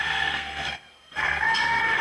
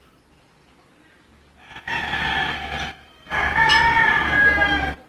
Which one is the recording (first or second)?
second